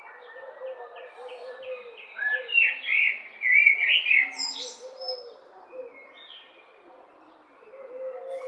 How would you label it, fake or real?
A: real